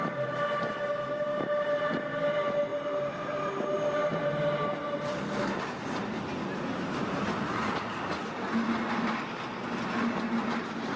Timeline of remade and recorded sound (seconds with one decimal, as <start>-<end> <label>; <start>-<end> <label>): 0.0-1.3 recorded; 1.3-1.9 remade; 1.9-4.8 recorded; 4.8-5.4 remade; 5.4-6.7 recorded; 6.7-8.2 remade; 8.2-11.0 recorded